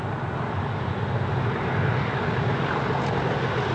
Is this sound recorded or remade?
recorded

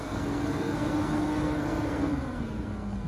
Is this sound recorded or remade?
remade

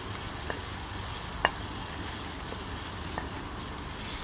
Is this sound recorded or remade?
recorded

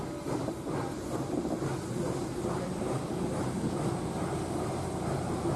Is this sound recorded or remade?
recorded